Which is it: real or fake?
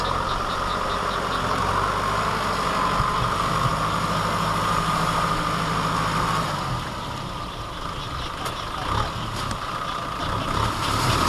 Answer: real